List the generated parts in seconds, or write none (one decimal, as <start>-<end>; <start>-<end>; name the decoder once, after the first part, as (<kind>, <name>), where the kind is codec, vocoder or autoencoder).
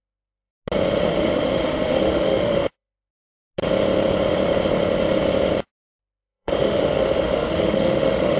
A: 0.0-0.5 (autoencoder, DAC-VAE); 1.1-3.1; 6.0-8.4